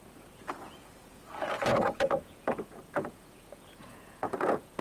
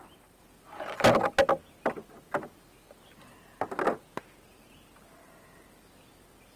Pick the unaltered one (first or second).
second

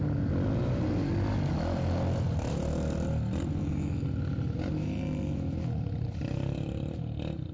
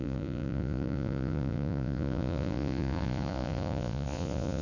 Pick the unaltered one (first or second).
first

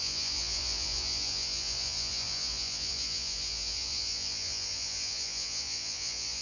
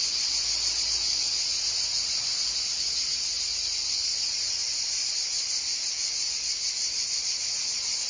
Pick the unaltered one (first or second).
second